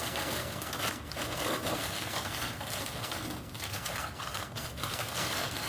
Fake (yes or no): yes